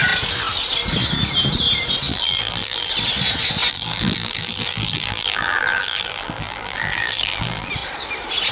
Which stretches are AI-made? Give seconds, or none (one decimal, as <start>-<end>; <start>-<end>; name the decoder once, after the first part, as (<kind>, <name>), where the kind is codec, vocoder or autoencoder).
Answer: 2.1-2.9 (vocoder, BigVGAN v2); 3.7-7.7